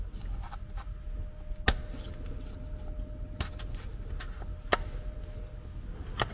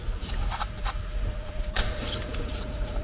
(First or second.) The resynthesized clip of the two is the second